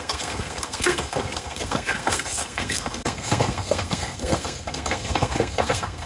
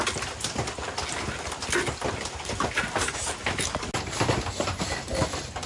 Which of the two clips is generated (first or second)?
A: first